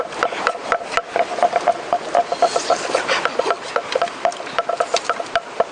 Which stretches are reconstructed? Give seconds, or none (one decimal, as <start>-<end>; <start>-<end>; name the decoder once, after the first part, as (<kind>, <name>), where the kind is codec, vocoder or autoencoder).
none